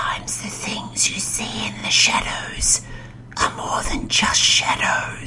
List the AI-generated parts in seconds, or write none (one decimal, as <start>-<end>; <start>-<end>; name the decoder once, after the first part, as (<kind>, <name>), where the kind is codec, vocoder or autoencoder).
none